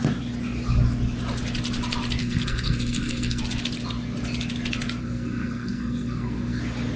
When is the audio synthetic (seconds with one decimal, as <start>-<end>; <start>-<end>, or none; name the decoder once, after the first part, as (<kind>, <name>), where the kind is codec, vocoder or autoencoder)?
2.2-3.4 (codec, SNAC); 5.0-6.6